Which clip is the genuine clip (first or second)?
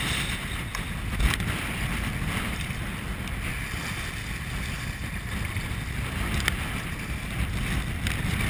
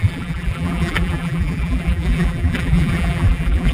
first